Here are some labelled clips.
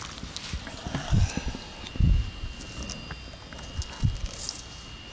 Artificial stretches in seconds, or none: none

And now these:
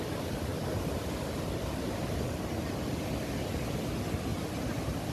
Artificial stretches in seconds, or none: 4.3-5.1 (vocoder, BigVGAN v2)